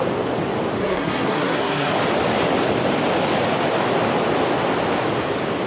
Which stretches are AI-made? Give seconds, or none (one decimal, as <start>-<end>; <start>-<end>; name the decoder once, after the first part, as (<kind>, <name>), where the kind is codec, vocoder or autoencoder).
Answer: 0.8-1.9 (codec, SNAC)